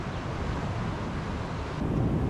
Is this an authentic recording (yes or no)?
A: yes